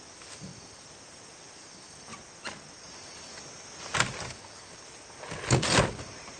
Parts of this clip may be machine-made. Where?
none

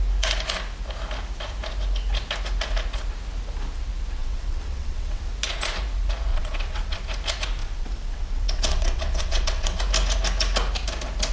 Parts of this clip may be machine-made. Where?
4.2-5.3 (vocoder, WaveNeXt); 6.3-7.0; 7.6-9.8

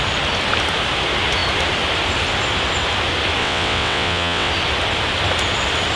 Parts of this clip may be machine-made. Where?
3.4-4.5 (vocoder, WaveNeXt)

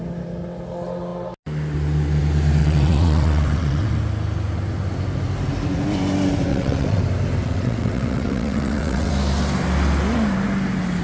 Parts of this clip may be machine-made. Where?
2.6-3.9 (vocoder, WaveNeXt); 6.5-7.0; 7.4-9.1

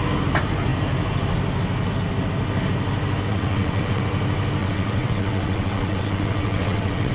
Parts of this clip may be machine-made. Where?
3.3-4.0 (vocoder, WaveNeXt); 4.6-7.1

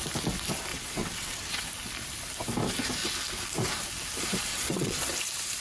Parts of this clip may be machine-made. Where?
0.7-1.5 (vocoder, WaveNeXt); 4.5-5.1

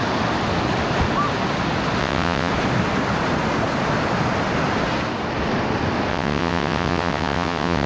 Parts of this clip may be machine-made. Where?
2.0-2.5 (vocoder, WaveNeXt); 6.1-7.9

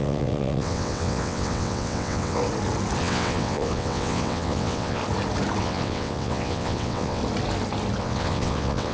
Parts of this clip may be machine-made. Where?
0.0-2.4 (vocoder, WaveNeXt); 3.0-5.0; 5.6-7.2; 8.0-8.9